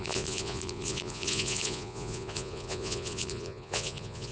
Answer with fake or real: fake